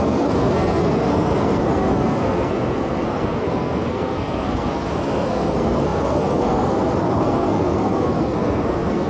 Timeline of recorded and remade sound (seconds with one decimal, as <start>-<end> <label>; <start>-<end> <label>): 0.0-9.1 remade

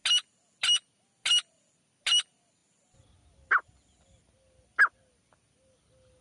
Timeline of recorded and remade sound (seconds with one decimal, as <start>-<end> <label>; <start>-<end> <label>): 0.0-6.2 recorded